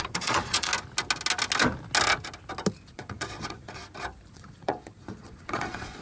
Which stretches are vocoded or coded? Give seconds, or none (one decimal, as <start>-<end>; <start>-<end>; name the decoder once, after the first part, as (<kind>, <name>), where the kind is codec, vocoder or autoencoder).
0.0-0.7 (vocoder, Vocos); 2.9-3.8; 4.3-6.0